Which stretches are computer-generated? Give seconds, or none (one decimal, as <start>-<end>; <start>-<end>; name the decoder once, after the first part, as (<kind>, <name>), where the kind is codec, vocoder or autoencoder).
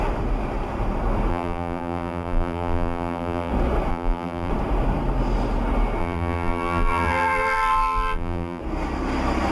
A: 1.3-3.5 (vocoder, BigVGAN v2); 3.9-4.5; 6.0-8.6